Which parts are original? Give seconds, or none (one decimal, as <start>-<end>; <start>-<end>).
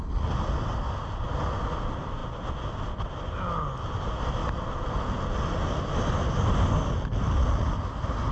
0.0-8.3